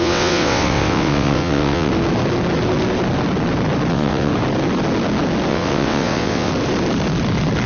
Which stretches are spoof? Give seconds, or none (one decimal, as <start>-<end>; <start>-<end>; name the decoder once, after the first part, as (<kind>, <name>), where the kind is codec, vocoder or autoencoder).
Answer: 0.0-1.9 (vocoder, WaveNeXt); 3.9-4.3; 5.5-6.5